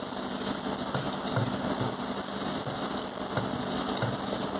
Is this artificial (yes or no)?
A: no